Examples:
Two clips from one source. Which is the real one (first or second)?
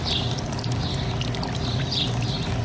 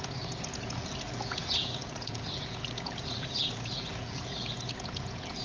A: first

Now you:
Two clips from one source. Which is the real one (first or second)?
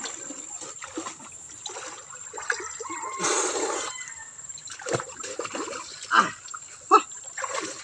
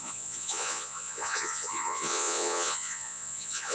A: first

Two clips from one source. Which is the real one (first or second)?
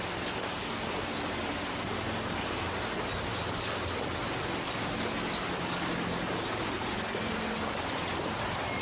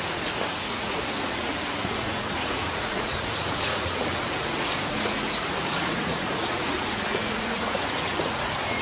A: first